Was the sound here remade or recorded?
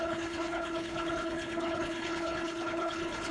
remade